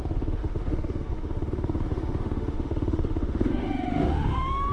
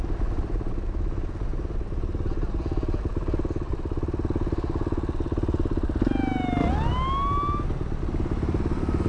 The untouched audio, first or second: second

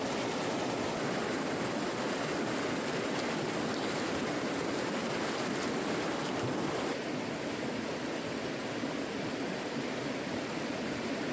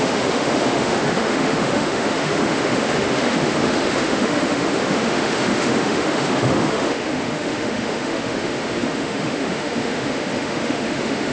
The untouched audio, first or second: first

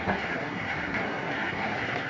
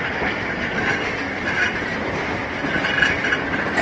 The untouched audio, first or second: second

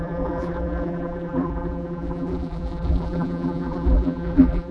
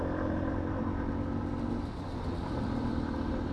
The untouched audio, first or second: second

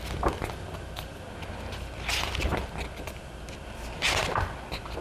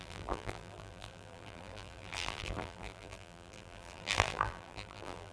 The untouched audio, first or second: first